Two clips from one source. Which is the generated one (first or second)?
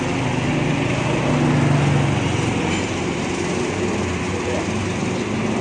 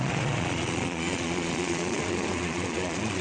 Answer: second